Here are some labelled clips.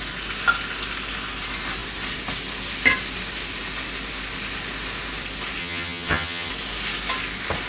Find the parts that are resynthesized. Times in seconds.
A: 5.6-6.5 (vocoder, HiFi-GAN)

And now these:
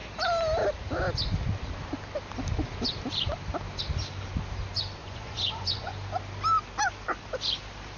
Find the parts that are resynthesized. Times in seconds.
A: 5.0-5.9 (vocoder, Vocos)